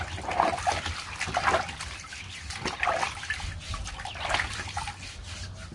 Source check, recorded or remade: recorded